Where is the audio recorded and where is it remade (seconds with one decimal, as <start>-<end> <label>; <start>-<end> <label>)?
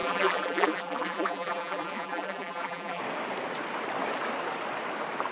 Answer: 0.0-3.0 remade; 3.0-5.3 recorded